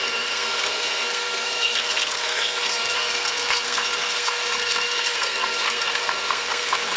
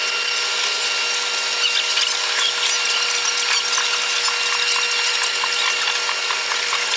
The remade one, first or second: first